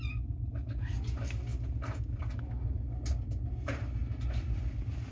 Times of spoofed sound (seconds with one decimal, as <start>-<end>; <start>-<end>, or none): none